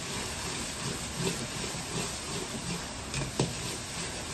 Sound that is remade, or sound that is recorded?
recorded